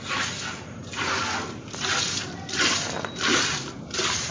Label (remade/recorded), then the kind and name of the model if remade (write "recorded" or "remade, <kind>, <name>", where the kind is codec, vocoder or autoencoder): recorded